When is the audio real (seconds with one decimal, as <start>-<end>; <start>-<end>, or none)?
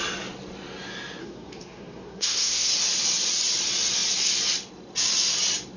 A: 0.0-1.2; 2.7-5.8